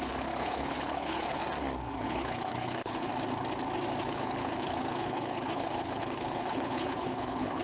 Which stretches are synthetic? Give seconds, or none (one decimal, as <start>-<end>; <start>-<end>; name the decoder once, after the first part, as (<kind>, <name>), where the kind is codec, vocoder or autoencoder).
0.0-1.4 (codec, HILCodec); 2.0-3.1; 4.0-7.6